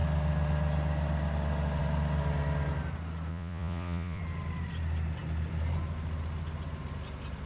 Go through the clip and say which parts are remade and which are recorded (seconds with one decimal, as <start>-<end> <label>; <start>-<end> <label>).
0.0-3.3 recorded; 3.3-4.2 remade; 4.2-7.5 recorded